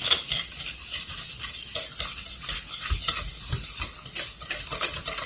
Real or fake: real